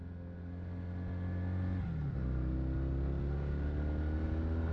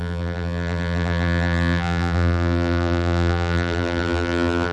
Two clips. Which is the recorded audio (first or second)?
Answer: first